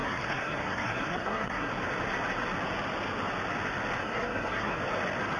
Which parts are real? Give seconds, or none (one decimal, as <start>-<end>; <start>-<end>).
1.7-4.0; 4.8-5.4